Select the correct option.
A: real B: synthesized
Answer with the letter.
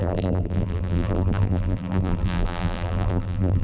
B